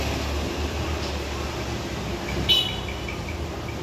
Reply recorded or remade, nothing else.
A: recorded